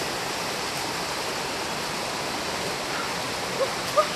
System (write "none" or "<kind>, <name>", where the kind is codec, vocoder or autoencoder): none